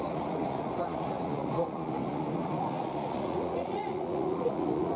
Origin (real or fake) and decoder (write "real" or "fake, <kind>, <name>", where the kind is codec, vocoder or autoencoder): fake, vocoder, Vocos